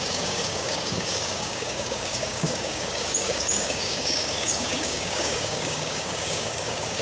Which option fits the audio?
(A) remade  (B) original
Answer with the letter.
A